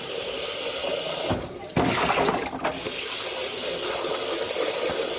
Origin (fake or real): real